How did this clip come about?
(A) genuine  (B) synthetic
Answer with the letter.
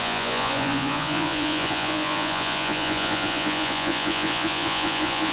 B